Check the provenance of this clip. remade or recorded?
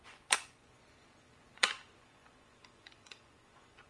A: remade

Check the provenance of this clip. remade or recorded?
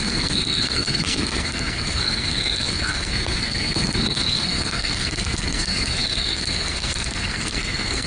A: remade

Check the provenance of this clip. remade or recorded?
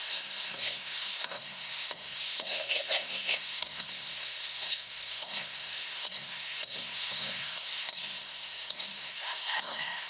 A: remade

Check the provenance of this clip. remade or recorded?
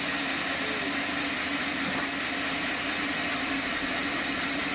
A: recorded